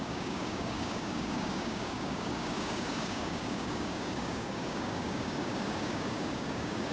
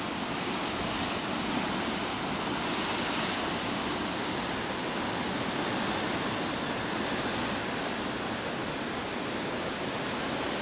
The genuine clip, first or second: second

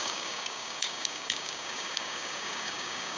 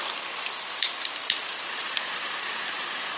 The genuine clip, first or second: second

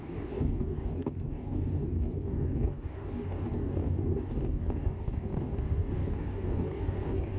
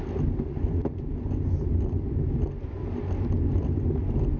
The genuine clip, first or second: second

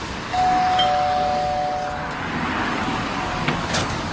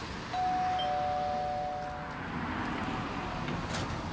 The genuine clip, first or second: second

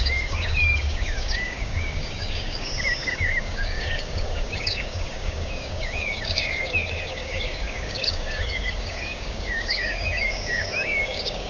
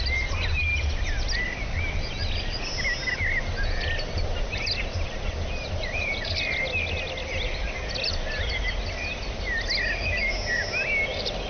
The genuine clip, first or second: second